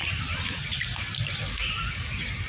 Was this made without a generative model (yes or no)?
yes